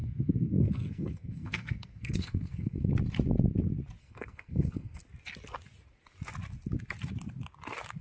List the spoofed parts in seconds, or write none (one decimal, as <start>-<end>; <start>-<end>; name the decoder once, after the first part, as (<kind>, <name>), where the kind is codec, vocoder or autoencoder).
0.0-2.9 (codec, SNAC); 4.0-5.0

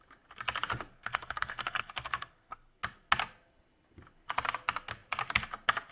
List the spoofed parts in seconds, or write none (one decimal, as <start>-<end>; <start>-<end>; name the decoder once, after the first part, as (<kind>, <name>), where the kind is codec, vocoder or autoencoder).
0.9-2.8 (codec, SNAC)

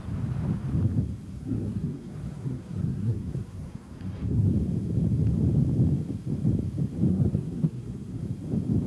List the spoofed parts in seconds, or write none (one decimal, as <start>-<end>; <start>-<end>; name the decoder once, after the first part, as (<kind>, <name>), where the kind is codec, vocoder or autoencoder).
1.3-4.5 (codec, SNAC); 7.1-8.2

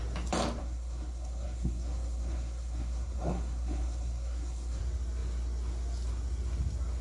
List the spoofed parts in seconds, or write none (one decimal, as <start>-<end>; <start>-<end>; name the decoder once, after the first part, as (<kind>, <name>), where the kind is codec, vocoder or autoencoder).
0.6-4.8 (codec, SNAC)

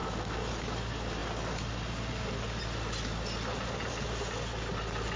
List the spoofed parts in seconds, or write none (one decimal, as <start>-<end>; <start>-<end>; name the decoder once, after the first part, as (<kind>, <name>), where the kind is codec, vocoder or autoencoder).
none

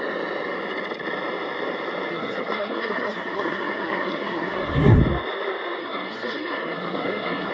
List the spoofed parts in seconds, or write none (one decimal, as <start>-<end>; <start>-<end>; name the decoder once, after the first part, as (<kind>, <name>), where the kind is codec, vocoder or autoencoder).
2.1-5.0 (codec, SNAC); 5.8-7.5

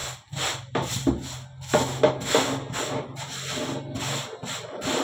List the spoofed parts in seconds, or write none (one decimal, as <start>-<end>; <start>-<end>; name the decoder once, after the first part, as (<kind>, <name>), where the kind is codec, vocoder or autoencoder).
none